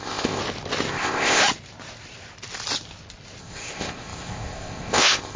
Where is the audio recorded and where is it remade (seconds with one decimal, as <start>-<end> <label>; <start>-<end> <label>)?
0.0-0.4 remade; 0.4-0.9 recorded; 0.9-1.4 remade; 1.4-3.4 recorded; 3.4-5.4 remade